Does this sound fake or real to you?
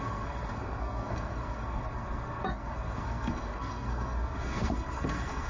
fake